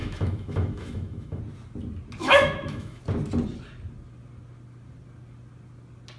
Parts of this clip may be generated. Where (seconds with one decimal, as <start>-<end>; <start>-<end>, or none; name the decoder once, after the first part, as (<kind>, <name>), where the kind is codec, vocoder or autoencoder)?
0.0-1.4 (autoencoder, DAC-VAE); 2.2-3.0